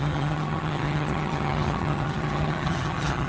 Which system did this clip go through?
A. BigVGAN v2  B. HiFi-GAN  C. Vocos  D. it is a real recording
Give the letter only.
B